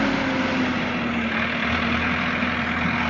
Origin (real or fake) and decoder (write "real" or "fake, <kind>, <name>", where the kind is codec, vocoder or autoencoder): real